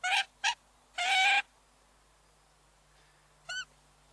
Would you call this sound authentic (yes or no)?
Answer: yes